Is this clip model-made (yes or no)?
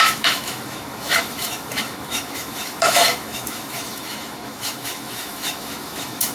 yes